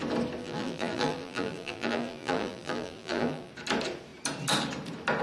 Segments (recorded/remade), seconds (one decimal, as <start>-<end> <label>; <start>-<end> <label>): 0.0-0.4 recorded; 0.4-3.5 remade; 3.5-5.2 recorded